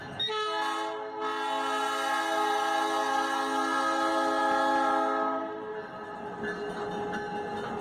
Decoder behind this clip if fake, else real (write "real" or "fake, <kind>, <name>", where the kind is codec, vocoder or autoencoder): real